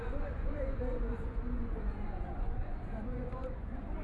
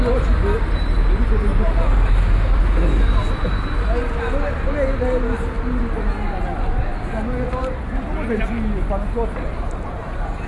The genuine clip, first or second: second